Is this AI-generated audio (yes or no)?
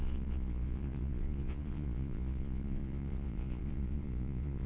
yes